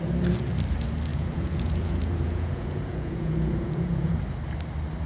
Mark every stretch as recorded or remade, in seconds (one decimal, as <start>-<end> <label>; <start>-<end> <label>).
0.0-1.1 recorded; 1.1-4.2 remade; 4.2-5.1 recorded